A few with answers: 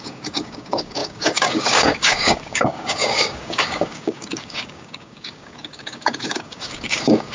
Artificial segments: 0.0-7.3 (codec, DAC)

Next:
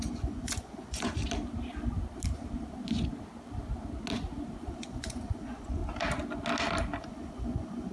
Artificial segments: 0.0-1.2 (vocoder, Vocos); 4.7-5.8; 7.0-7.9